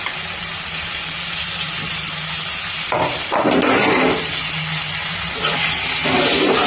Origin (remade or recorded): recorded